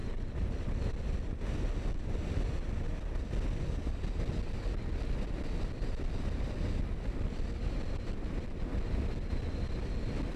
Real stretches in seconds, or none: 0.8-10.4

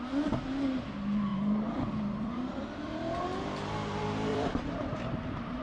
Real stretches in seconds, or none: 0.0-1.3; 2.9-4.3

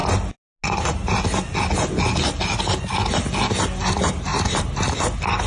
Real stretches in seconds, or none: 0.0-4.3; 4.9-5.5